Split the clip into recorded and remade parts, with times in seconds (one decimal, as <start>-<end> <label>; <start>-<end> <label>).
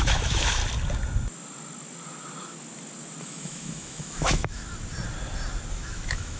0.0-0.6 remade; 0.6-3.2 recorded; 3.2-4.6 remade; 4.6-5.7 recorded; 5.7-6.4 remade